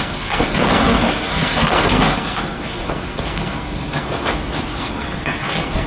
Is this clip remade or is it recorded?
remade